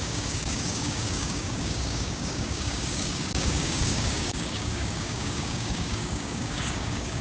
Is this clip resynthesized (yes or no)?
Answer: yes